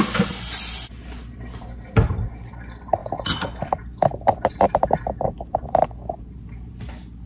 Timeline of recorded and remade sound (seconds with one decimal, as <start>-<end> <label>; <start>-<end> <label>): 0.0-7.3 recorded